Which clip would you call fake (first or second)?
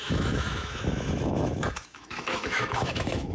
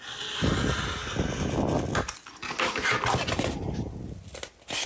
first